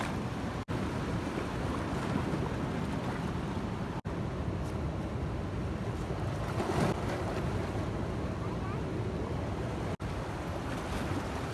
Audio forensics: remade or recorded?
recorded